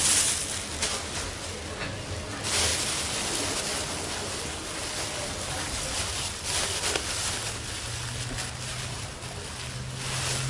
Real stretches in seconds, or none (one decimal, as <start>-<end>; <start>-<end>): 0.0-10.5

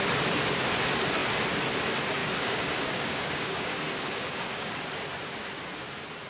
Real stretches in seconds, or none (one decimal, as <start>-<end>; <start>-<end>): 0.0-2.2; 4.7-6.3

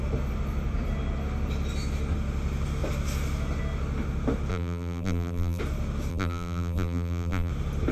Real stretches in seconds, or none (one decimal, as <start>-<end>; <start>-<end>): 0.0-4.5; 5.6-6.1; 7.5-7.9

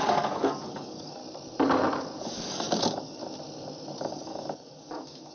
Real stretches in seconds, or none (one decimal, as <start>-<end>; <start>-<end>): 1.2-2.2; 3.2-4.0